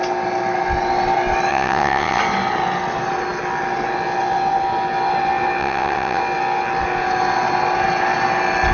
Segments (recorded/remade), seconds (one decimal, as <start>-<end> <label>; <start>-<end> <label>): 0.0-1.5 recorded; 1.5-2.2 remade; 2.2-5.6 recorded; 5.6-6.2 remade; 6.2-8.7 recorded